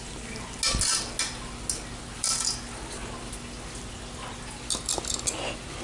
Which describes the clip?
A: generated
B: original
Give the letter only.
B